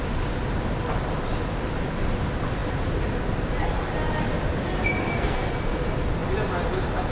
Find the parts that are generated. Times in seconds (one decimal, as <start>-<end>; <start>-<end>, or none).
5.0-5.5